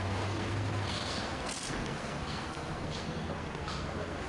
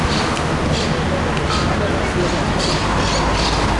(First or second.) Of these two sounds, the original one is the second